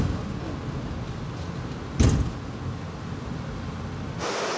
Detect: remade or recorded recorded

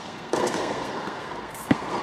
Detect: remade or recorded remade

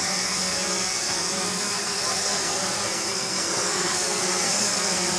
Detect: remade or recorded remade